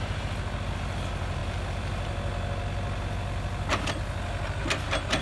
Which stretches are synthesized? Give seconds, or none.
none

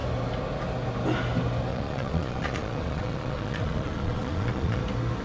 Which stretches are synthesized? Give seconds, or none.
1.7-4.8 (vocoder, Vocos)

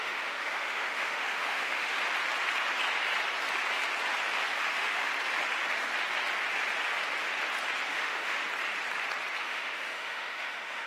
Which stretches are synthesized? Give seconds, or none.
0.0-2.0 (autoencoder, DAC-VAE); 4.5-5.1; 7.9-8.4; 9.4-10.9

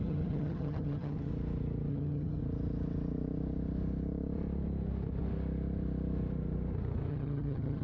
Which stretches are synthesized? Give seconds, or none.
0.0-1.3 (vocoder, HiFi-GAN); 1.9-2.4; 7.1-7.8

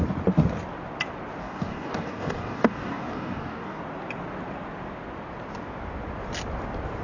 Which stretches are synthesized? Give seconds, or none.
1.4-3.8 (codec, DAC)

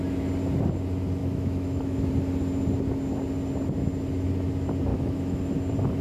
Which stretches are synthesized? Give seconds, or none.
1.2-2.1 (autoencoder, DAC-VAE); 4.9-5.4

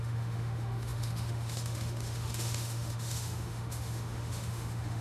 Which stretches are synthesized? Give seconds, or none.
0.0-5.0 (autoencoder, DAC-VAE)